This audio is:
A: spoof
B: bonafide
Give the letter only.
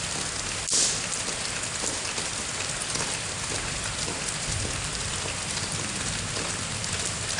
B